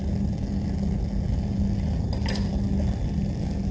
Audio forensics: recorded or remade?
recorded